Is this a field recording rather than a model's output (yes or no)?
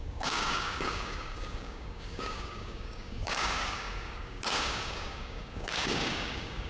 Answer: no